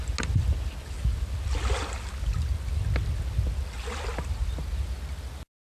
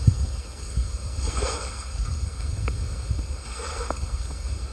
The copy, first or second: second